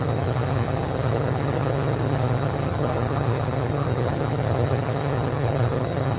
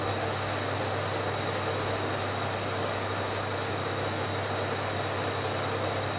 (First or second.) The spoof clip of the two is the first